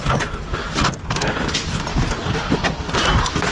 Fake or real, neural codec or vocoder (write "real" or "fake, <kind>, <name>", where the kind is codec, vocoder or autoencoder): real